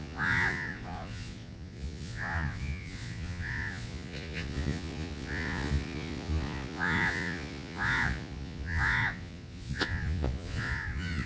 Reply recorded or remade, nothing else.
remade